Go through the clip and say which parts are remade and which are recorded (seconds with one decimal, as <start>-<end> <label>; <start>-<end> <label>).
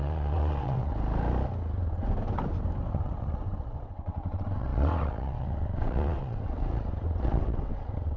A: 0.0-0.9 remade; 0.9-2.9 recorded; 2.9-8.2 remade